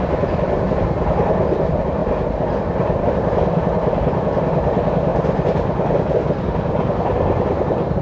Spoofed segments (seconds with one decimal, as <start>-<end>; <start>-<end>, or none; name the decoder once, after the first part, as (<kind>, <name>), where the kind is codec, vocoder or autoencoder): none